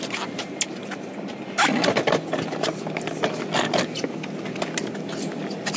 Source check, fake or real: real